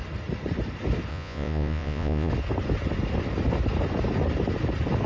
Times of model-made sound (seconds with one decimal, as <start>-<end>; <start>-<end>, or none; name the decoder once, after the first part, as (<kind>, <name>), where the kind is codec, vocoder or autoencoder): 1.1-2.3 (vocoder, Vocos)